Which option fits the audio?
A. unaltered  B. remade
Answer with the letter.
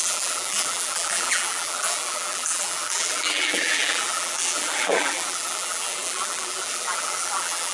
B